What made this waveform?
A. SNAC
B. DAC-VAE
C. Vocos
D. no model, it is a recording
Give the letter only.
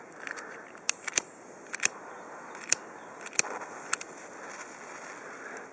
D